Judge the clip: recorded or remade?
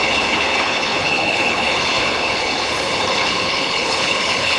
remade